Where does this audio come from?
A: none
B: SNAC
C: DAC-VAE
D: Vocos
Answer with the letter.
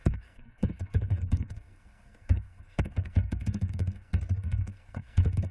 B